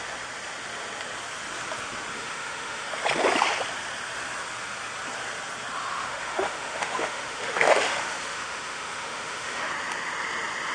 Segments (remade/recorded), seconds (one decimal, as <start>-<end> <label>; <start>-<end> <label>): 0.0-2.1 recorded; 2.1-3.0 remade; 3.0-5.9 recorded; 5.9-9.7 remade; 9.7-10.7 recorded